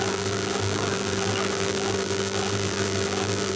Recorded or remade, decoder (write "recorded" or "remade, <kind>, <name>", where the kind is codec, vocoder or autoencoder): remade, vocoder, BigVGAN v2